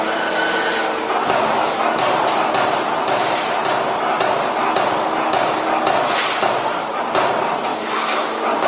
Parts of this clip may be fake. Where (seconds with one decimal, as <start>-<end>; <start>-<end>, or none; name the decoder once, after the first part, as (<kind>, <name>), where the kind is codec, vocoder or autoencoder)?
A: 7.7-8.7 (codec, DAC)